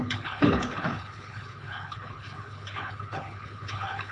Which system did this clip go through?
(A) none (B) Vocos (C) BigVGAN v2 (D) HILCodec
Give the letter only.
D